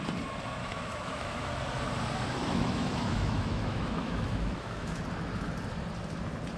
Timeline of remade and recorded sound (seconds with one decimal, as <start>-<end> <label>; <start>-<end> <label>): 0.0-0.6 recorded; 0.6-1.4 remade; 1.4-2.4 recorded; 2.4-5.0 remade; 5.0-6.6 recorded